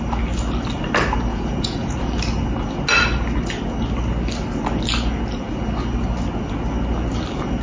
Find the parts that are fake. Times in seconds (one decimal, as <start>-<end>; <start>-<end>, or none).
1.3-2.0